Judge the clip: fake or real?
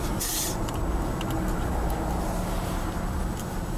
real